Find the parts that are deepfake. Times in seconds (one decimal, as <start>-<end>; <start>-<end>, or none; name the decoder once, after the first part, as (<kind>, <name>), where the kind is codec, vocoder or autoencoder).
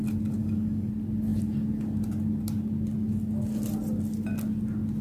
0.4-0.9 (codec, DAC)